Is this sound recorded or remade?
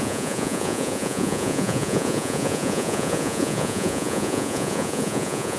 remade